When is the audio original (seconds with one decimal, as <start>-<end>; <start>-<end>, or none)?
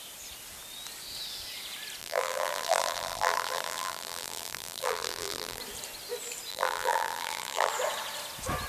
0.0-2.0; 5.6-6.5; 7.7-8.7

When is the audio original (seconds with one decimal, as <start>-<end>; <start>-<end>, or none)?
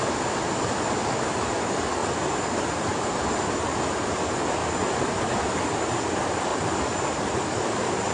0.0-2.0; 2.9-8.1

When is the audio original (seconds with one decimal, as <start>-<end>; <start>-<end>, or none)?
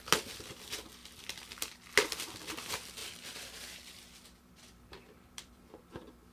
0.0-1.0; 1.6-3.0; 5.6-6.3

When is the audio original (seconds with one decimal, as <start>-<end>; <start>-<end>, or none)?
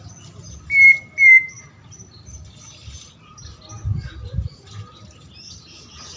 0.0-6.2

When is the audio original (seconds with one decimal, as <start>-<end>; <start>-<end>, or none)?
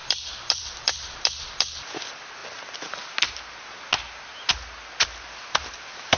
2.4-5.4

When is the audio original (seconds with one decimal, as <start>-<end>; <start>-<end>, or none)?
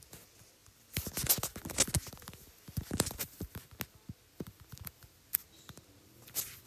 0.0-5.4